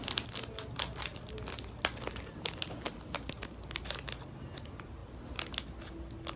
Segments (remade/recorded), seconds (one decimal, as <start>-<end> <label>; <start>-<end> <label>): 0.0-6.4 recorded